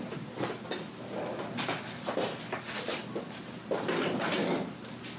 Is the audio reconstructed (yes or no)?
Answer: no